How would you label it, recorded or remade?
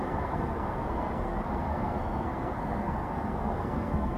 remade